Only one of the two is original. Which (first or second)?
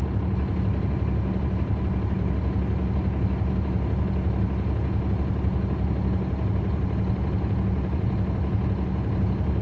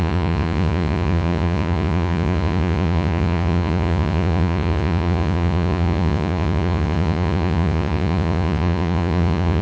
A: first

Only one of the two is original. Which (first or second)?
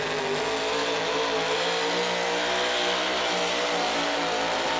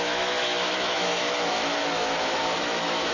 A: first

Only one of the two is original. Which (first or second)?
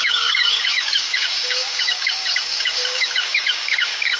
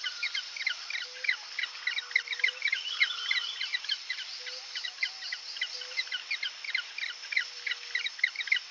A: second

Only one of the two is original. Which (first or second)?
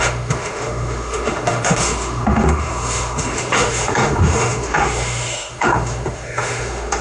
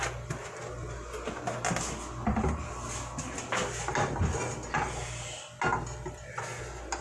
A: second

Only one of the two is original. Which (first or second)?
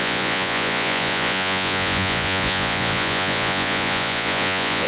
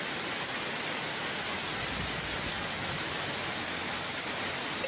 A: second